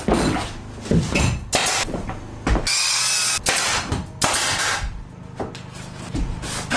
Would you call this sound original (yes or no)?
yes